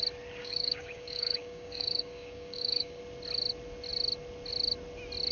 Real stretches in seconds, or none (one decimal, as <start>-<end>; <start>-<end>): 0.0-0.4; 3.0-5.3